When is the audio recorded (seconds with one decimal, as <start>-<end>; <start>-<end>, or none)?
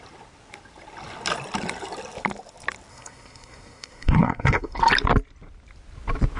0.0-2.9; 4.8-6.4